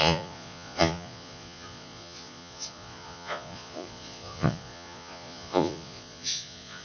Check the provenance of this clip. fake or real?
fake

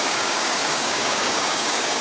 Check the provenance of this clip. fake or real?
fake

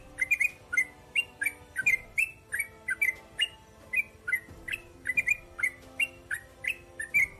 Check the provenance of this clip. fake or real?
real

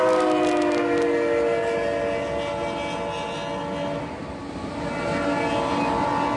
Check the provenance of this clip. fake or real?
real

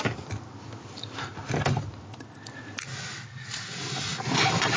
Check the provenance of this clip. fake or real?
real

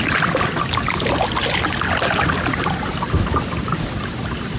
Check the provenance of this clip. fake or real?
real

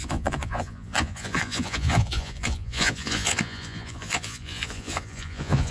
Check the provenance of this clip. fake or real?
fake